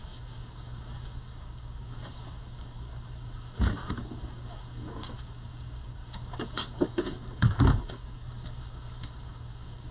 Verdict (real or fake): fake